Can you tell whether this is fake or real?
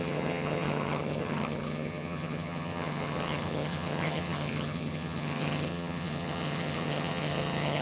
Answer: fake